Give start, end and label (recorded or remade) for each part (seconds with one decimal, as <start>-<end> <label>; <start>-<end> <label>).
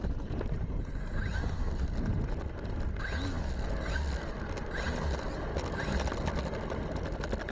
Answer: 0.0-1.6 remade; 1.6-7.5 recorded